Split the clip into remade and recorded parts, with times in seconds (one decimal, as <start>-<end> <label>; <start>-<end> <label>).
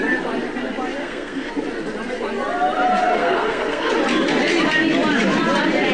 0.0-1.0 recorded; 1.0-1.5 remade; 1.5-3.2 recorded; 3.2-3.9 remade; 3.9-5.9 recorded